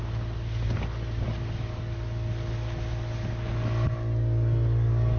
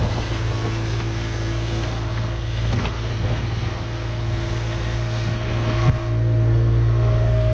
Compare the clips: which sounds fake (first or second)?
second